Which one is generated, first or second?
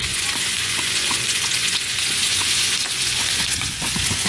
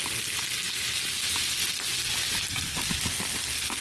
first